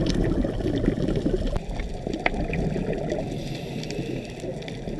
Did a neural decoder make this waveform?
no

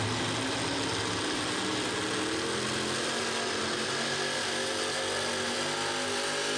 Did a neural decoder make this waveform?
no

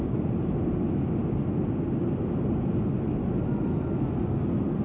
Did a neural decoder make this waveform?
no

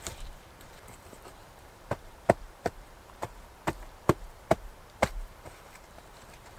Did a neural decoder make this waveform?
yes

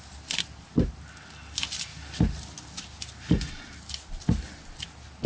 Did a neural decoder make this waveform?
no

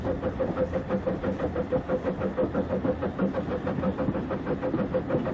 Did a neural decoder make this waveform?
no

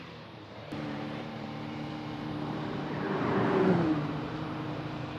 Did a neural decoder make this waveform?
yes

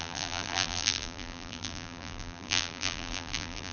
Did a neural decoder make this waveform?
yes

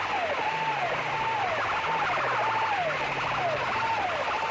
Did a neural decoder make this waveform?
no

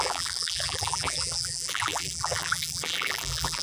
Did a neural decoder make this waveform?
yes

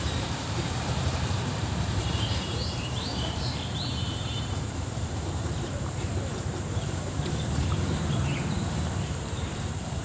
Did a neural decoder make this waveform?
yes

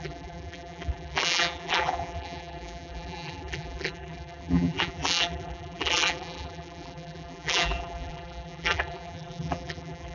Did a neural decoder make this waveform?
yes